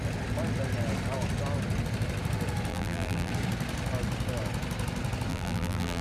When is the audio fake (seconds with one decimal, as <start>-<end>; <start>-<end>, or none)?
2.7-3.3; 5.3-6.0